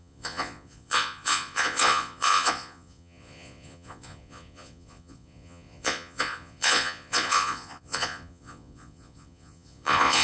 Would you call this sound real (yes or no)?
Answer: no